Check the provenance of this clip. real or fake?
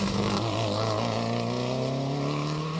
real